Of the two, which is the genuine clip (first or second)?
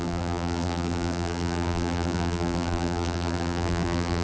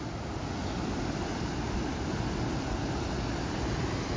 second